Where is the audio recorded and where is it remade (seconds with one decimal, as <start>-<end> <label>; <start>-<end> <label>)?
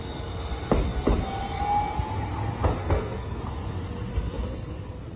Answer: 0.0-2.8 recorded; 2.8-3.4 remade; 3.4-4.1 recorded; 4.1-4.7 remade; 4.7-5.2 recorded